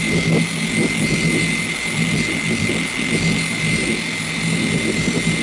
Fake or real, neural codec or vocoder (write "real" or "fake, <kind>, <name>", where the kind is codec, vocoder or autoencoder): real